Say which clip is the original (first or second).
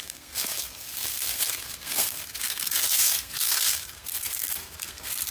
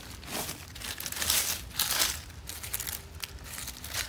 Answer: second